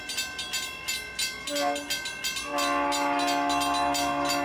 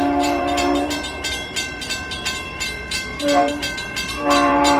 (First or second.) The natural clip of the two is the first